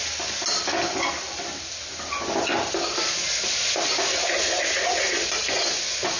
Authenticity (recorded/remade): recorded